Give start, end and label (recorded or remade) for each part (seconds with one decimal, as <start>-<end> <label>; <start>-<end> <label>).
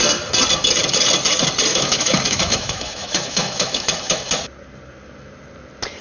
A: 0.0-1.7 recorded; 1.7-4.3 remade; 4.3-6.0 recorded